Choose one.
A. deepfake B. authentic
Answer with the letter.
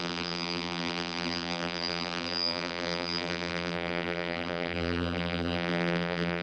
A